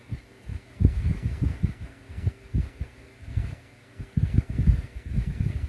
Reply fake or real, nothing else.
fake